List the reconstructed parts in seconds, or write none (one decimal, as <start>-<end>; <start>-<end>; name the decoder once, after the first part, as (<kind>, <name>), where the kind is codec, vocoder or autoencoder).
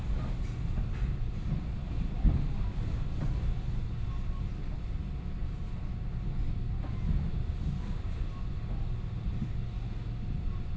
none